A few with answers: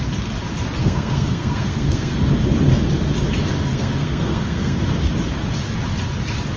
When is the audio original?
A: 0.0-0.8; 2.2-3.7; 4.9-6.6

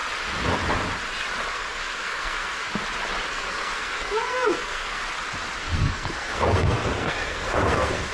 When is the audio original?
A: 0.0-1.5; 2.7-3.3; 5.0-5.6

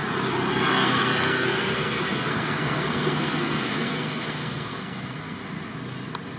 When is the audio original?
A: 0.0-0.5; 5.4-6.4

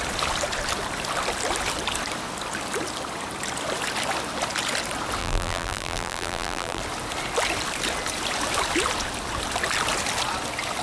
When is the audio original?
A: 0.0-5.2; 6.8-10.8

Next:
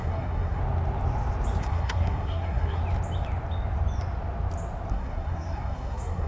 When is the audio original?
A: 0.6-1.6; 2.8-4.9